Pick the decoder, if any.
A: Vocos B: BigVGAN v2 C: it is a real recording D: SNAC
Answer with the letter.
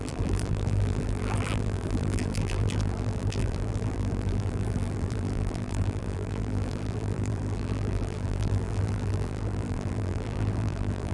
B